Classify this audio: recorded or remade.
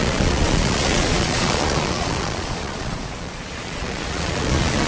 remade